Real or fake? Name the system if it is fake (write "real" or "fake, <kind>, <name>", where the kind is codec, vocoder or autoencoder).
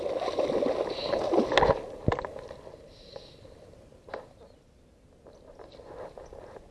real